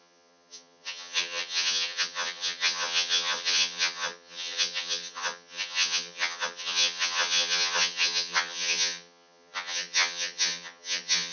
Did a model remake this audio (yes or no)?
yes